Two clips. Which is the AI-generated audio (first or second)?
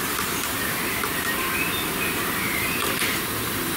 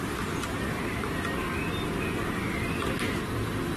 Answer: first